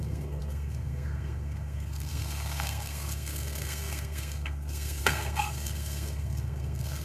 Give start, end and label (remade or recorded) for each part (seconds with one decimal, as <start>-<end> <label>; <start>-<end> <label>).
0.0-7.0 remade